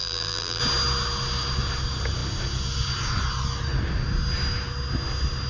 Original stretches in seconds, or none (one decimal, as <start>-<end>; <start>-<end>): 0.6-5.5